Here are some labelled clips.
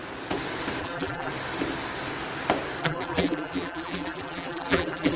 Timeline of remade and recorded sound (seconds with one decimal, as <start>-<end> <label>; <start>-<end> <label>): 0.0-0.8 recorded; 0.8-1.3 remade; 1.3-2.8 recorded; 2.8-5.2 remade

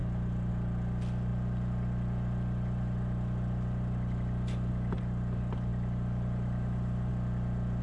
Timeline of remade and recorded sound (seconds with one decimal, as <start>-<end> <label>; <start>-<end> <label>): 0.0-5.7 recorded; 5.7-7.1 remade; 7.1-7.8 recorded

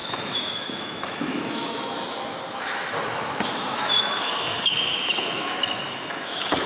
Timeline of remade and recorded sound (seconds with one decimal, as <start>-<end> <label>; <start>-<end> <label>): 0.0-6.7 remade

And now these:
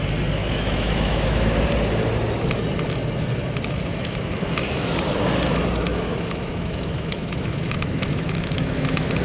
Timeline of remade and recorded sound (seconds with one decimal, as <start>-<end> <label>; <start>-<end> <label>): 0.0-0.4 recorded; 0.4-1.5 remade; 1.5-3.9 recorded; 3.9-4.5 remade; 4.5-5.9 recorded; 5.9-9.2 remade

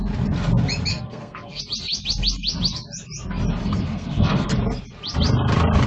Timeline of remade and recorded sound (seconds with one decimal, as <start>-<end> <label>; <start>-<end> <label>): 0.0-0.9 recorded; 0.9-1.6 remade; 1.6-3.6 recorded; 3.6-4.5 remade; 4.5-5.9 recorded